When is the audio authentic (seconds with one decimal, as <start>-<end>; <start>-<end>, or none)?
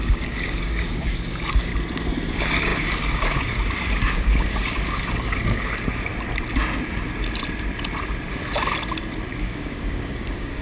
1.7-2.3; 6.1-9.4